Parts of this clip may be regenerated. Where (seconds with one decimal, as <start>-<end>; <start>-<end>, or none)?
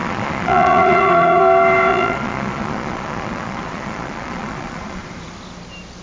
0.0-1.4; 1.9-5.1